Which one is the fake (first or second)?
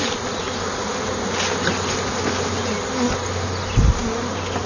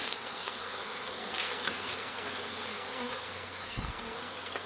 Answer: second